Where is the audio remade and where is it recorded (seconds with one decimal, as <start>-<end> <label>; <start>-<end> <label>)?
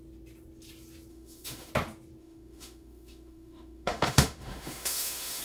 0.0-1.1 recorded; 1.1-1.7 remade; 1.7-2.2 recorded; 2.2-5.4 remade